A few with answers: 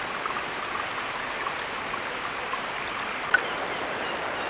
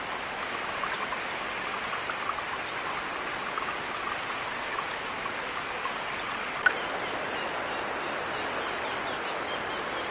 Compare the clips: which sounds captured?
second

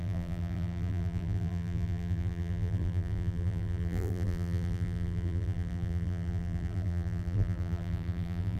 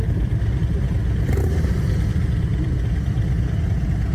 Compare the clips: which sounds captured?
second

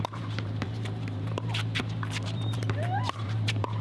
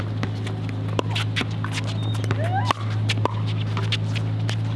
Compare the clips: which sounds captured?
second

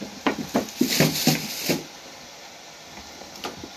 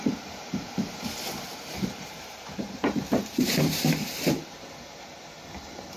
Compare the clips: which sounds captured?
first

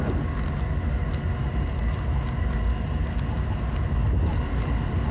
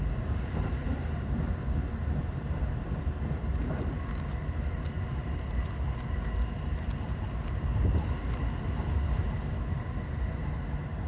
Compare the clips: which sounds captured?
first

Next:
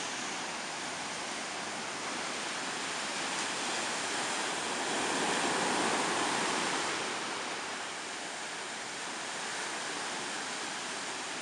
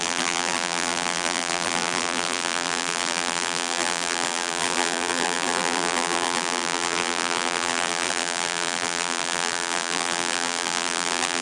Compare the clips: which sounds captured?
first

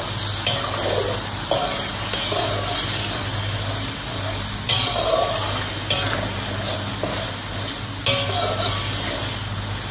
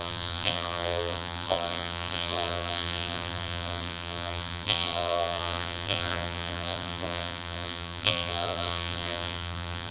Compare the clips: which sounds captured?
first